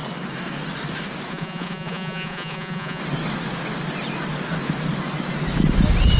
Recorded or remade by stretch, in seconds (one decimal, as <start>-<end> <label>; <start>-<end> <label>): 0.0-1.3 recorded; 1.3-3.0 remade; 3.0-6.2 recorded